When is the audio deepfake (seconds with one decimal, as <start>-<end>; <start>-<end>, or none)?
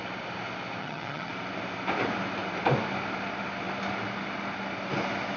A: 0.8-1.3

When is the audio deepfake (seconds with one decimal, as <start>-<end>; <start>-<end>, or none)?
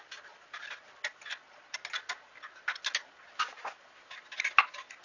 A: none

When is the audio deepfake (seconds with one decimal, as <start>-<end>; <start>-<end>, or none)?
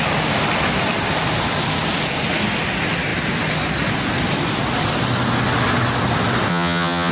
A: 6.5-7.1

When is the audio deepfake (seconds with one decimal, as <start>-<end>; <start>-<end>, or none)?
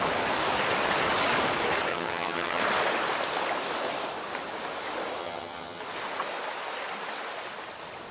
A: 1.9-2.6; 5.2-5.8